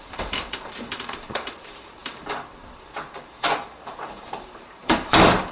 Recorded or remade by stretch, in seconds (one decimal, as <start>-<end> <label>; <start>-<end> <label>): 0.0-5.5 remade